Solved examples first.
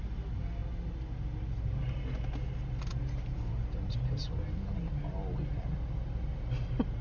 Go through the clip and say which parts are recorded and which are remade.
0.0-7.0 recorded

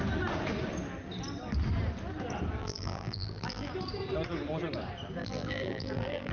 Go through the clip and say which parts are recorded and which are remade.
0.0-2.6 recorded; 2.6-3.7 remade; 3.7-5.2 recorded; 5.2-6.3 remade

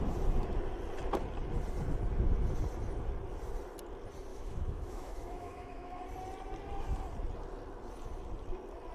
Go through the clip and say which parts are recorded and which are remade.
0.0-4.3 recorded; 4.3-6.0 remade; 6.0-8.9 recorded

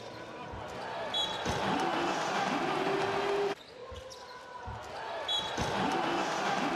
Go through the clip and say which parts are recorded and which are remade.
0.0-6.8 recorded